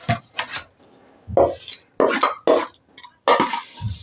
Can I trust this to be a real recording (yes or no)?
yes